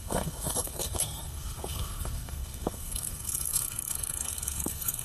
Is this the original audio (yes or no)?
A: no